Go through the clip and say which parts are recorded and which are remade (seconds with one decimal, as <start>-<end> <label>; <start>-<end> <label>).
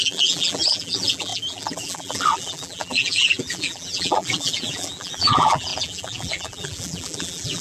0.0-7.6 remade